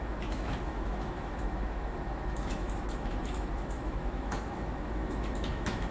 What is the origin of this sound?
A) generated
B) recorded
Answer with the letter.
A